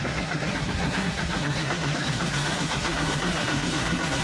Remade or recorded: remade